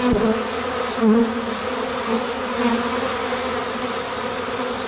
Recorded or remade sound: recorded